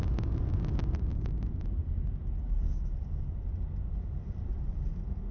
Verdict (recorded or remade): recorded